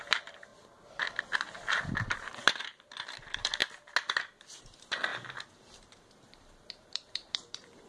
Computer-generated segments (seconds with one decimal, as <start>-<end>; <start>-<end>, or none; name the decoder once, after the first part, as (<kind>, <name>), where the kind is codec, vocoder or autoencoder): 0.0-0.5 (vocoder, BigVGAN v2); 1.2-3.6; 4.6-7.9